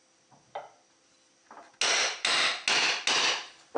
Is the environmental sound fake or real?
real